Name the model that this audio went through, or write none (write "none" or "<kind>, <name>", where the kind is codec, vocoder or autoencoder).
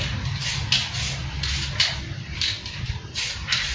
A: none